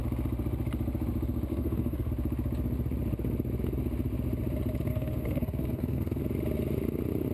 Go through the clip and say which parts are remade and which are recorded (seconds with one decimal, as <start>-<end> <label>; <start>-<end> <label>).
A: 0.0-1.5 recorded; 1.5-2.1 remade; 2.1-4.9 recorded; 4.9-6.2 remade; 6.2-7.3 recorded